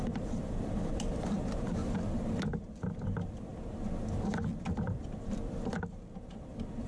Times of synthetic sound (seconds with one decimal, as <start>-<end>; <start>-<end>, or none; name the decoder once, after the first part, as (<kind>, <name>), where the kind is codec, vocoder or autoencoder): 0.0-1.8 (vocoder, BigVGAN v2); 2.6-3.5; 4.2-6.3